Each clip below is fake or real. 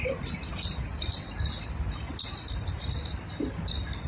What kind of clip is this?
real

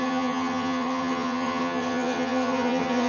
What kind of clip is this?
fake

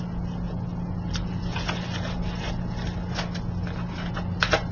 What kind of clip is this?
real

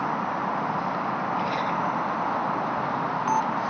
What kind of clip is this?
real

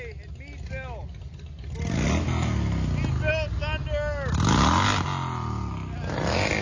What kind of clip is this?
real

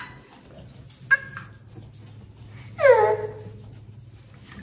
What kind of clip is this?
real